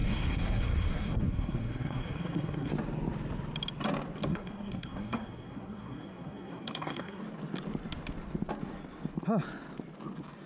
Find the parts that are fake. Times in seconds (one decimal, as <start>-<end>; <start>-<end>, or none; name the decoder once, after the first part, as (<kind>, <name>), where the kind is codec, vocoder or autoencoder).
0.0-2.7 (codec, SNAC); 4.3-7.2